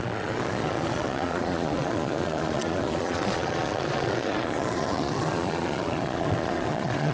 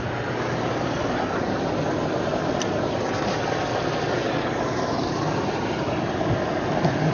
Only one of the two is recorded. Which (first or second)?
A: second